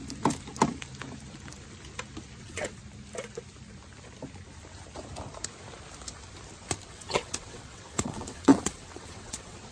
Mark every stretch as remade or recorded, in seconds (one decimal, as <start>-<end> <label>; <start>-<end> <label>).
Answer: 0.0-2.4 recorded; 2.4-2.8 remade; 2.8-6.9 recorded; 6.9-9.7 remade